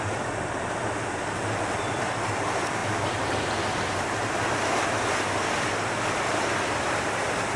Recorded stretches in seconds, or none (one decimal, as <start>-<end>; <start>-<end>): 0.0-7.6

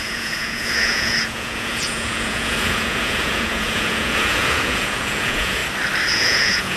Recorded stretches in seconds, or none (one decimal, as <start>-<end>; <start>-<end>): 5.6-6.1